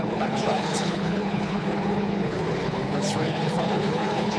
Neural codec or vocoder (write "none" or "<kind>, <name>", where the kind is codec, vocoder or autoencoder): codec, HILCodec